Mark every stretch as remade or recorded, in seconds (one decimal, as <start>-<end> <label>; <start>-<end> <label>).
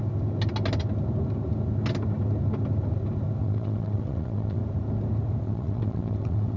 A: 0.0-3.4 recorded; 3.4-4.6 remade; 4.6-5.4 recorded; 5.4-6.6 remade